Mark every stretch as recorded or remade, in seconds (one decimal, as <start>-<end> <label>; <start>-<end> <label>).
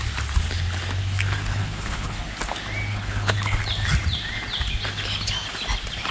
0.0-1.5 recorded; 1.5-2.2 remade; 2.2-2.9 recorded; 2.9-3.6 remade; 3.6-6.1 recorded